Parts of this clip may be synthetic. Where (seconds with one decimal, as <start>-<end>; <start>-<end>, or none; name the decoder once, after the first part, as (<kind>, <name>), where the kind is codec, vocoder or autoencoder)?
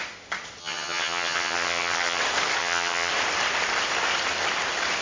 0.6-2.2 (vocoder, HiFi-GAN); 2.6-3.1